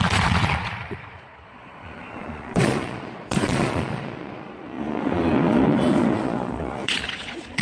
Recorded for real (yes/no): no